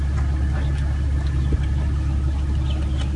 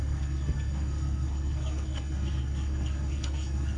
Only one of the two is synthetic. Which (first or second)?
second